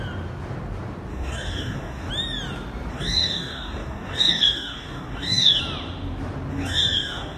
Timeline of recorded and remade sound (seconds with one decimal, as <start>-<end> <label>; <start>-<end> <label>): 0.0-1.1 recorded; 1.1-2.1 remade; 2.1-2.9 recorded; 2.9-5.6 remade; 5.6-6.5 recorded; 6.5-7.4 remade